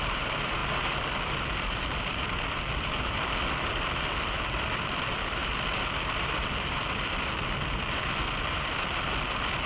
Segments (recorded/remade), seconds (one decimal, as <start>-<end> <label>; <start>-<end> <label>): 0.0-0.6 remade; 0.6-3.0 recorded; 3.0-9.7 remade